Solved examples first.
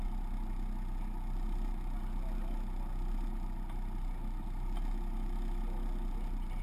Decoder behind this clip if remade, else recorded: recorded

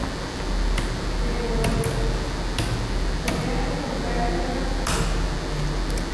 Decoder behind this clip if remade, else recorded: recorded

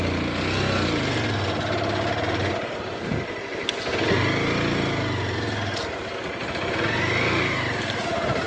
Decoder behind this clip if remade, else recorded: recorded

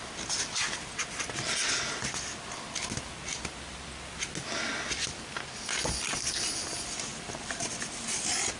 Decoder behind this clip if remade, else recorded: recorded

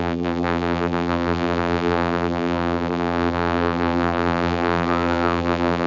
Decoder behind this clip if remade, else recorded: remade, vocoder, BigVGAN v2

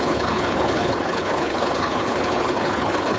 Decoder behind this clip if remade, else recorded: remade, codec, HILCodec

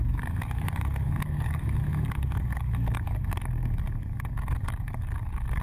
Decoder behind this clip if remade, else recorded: remade, codec, DAC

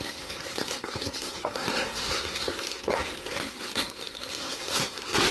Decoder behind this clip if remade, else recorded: remade, codec, SNAC